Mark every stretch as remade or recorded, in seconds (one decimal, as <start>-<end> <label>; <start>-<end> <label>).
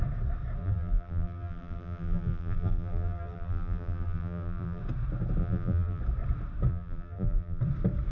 0.0-0.6 recorded; 0.6-4.8 remade; 4.8-5.4 recorded; 5.4-6.0 remade; 6.0-6.7 recorded; 6.7-7.6 remade; 7.6-8.1 recorded